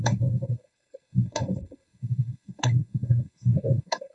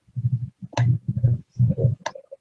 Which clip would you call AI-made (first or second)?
first